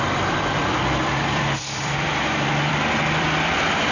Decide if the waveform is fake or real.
fake